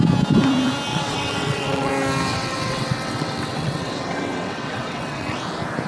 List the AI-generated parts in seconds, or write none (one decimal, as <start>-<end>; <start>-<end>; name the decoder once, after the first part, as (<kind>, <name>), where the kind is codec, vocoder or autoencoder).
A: 0.9-1.9 (vocoder, WaveNeXt); 2.3-5.4

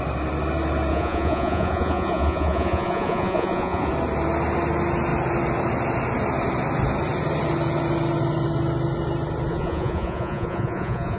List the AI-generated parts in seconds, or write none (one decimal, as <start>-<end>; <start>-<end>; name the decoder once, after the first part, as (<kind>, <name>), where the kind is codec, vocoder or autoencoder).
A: 0.9-3.9 (vocoder, Vocos); 9.5-11.2

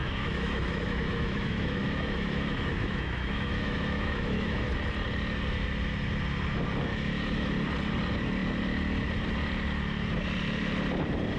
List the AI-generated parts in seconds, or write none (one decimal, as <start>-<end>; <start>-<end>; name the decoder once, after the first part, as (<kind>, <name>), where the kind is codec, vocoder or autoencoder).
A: 0.0-4.7 (autoencoder, DAC-VAE); 6.9-7.5

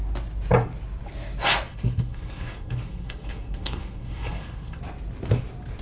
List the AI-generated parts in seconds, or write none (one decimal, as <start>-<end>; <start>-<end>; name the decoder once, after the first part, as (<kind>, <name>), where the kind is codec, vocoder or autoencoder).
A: 1.7-4.8 (codec, SNAC)

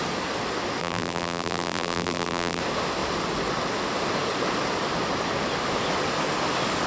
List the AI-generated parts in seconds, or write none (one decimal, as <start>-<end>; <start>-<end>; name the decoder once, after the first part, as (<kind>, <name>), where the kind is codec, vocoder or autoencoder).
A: 0.8-2.6 (vocoder, BigVGAN v2)

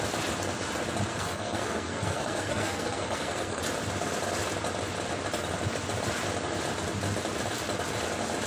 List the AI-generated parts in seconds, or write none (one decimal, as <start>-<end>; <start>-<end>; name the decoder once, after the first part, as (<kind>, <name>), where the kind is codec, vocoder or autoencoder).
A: 1.1-3.6 (codec, SNAC)